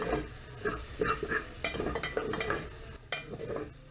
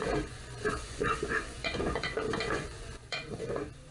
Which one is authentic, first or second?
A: first